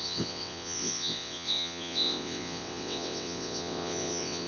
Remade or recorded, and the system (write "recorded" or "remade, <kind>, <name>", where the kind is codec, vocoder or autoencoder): remade, vocoder, WaveNeXt